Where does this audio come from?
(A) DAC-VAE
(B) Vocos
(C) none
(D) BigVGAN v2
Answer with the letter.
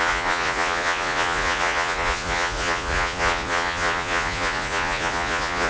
B